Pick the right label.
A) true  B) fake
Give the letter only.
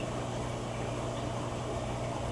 A